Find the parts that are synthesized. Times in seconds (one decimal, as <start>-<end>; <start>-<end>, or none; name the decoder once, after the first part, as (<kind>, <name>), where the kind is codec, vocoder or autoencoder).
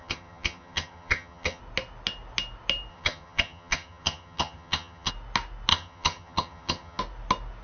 0.0-1.6 (vocoder, HiFi-GAN); 2.9-5.1; 5.7-7.0